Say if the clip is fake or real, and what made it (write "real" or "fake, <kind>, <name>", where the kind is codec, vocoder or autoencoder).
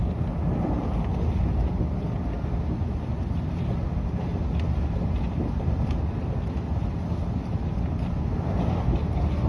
real